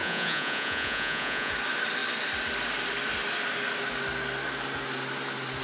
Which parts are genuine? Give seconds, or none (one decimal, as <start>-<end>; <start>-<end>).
1.5-5.6